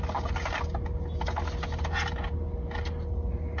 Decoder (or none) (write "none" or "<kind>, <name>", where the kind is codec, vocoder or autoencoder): none